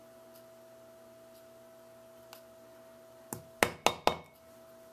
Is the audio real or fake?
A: real